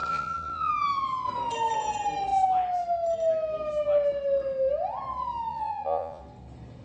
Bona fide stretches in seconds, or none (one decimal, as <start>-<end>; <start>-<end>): 0.7-5.5; 6.2-6.8

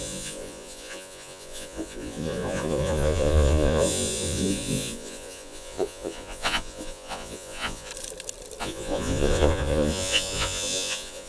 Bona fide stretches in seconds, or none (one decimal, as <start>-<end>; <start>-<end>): 7.9-8.6

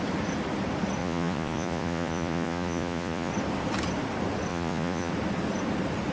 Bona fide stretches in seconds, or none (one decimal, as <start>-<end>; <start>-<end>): 0.0-1.0; 3.3-4.5; 5.1-6.1

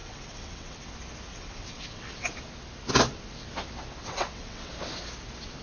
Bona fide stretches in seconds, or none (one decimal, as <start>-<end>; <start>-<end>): 0.9-1.3; 2.3-4.0; 4.7-5.6